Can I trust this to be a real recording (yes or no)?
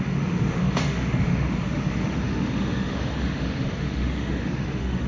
no